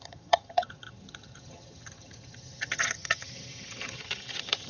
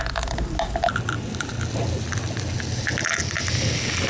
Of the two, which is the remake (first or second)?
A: first